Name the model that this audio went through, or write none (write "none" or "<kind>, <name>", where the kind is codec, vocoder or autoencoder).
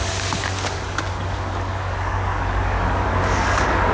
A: codec, DAC